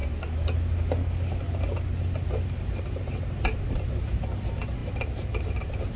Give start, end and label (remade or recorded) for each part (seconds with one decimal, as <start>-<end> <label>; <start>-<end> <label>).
0.0-2.8 recorded; 2.8-6.0 remade